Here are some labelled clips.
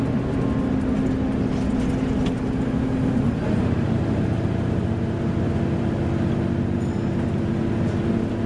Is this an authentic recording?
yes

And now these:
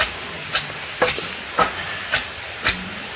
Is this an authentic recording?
yes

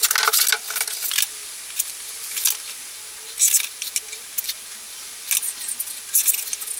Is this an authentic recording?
yes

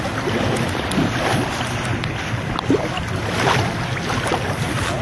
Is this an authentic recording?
yes